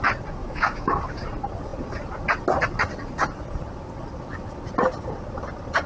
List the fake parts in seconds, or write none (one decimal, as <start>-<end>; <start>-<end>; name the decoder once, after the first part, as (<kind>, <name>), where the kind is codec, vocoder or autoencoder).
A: 0.4-1.0 (autoencoder, DAC-VAE)